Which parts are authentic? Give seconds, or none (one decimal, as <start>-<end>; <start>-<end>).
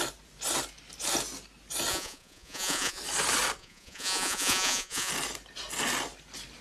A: 0.0-1.9; 3.0-3.6; 5.1-6.6